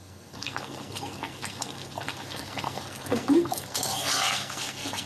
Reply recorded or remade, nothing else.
remade